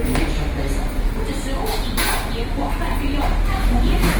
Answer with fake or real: real